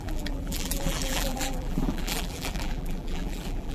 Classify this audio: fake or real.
fake